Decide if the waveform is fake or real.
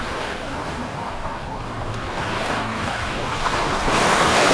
fake